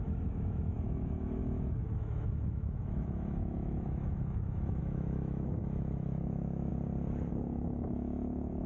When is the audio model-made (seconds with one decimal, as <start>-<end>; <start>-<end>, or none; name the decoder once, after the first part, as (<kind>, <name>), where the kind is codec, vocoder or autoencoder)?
0.0-6.7 (autoencoder, DAC-VAE); 7.3-8.7